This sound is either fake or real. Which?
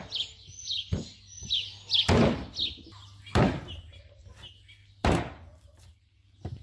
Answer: real